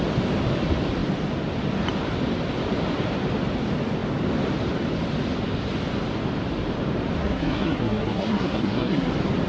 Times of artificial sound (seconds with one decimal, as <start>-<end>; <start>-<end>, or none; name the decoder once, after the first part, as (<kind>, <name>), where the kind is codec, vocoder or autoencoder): 7.2-9.1 (codec, SNAC)